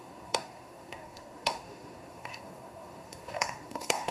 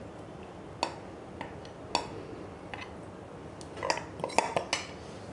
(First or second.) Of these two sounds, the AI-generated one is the first